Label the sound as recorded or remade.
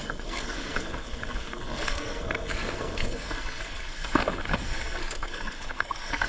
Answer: remade